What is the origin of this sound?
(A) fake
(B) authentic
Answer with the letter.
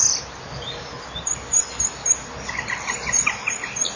B